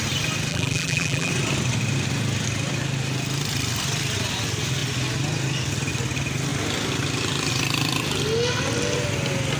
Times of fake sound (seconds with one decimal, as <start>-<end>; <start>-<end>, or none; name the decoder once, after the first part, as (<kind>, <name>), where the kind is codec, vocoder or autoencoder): 0.5-1.3 (vocoder, BigVGAN v2)